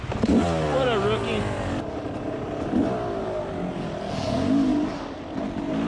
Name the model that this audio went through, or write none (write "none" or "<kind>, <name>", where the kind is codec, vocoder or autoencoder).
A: none